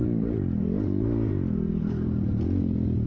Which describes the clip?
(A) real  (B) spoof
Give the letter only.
A